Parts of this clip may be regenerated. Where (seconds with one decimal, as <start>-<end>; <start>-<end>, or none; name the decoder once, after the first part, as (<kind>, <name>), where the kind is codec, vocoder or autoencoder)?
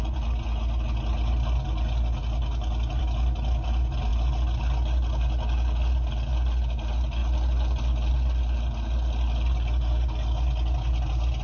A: none